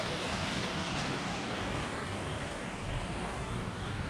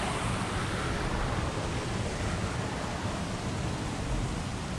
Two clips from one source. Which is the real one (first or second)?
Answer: second